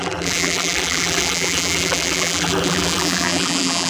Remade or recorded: remade